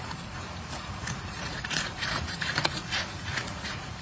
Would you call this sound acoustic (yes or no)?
no